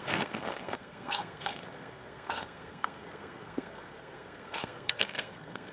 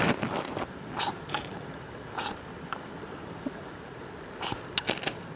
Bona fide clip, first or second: second